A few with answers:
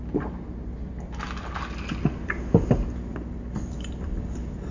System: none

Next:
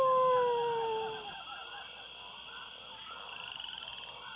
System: none